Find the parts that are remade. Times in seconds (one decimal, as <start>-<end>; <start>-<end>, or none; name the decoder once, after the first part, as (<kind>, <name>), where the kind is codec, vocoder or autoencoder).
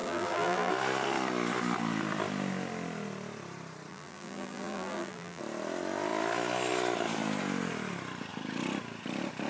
0.0-0.7 (vocoder, BigVGAN v2); 3.9-5.4